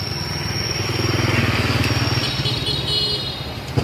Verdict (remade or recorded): recorded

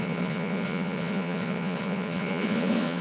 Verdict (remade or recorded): remade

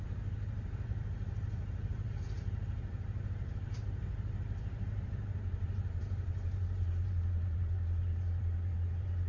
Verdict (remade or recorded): remade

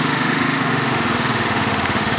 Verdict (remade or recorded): remade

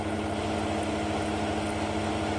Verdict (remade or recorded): recorded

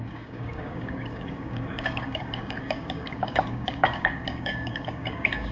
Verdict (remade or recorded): remade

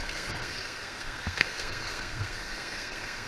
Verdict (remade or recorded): remade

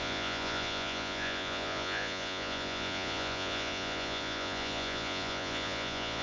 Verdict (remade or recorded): remade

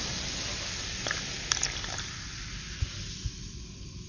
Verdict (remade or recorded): recorded